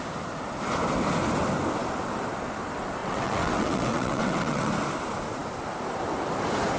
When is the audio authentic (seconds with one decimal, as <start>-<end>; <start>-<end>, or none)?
0.0-3.0; 4.7-6.8